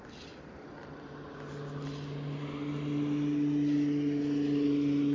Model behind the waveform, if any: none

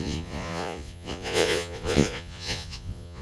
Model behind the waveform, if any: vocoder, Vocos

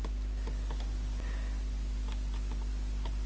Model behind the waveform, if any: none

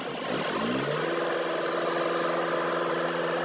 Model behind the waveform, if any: none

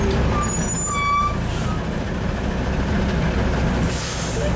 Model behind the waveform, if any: none